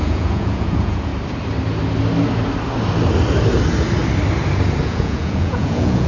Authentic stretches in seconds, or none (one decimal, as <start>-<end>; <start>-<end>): 1.1-4.8

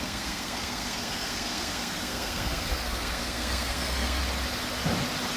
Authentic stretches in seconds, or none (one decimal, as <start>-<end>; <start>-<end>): 4.2-5.4

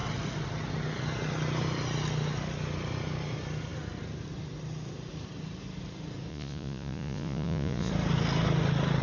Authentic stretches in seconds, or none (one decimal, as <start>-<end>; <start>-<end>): 0.0-6.3; 7.9-9.0